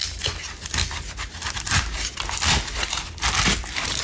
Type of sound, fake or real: real